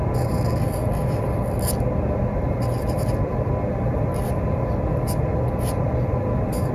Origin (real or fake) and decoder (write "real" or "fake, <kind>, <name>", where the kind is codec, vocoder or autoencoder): real